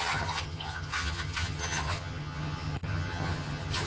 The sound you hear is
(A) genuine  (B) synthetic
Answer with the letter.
B